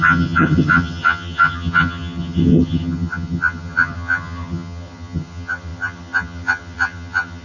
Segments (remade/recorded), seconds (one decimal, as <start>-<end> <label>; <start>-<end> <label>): 0.0-7.4 remade